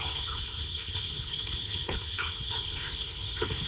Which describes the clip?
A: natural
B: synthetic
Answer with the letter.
B